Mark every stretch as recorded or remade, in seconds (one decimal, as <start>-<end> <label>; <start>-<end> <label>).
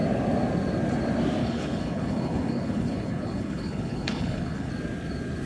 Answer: 0.0-1.4 recorded; 1.4-4.7 remade; 4.7-5.5 recorded